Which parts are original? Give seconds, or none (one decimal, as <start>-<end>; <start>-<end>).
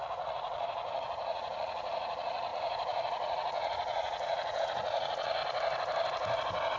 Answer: 5.4-6.8